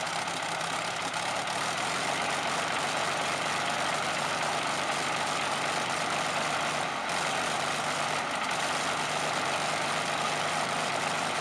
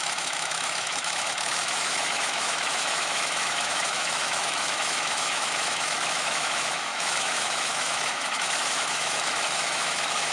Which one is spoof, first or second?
second